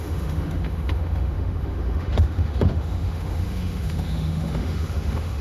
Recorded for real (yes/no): no